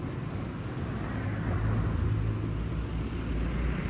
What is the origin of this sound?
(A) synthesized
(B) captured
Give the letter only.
B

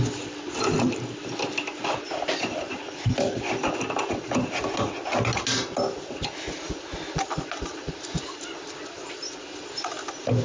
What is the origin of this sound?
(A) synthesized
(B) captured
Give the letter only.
B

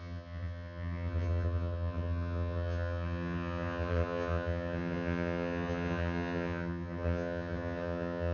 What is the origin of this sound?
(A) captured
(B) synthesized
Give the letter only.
B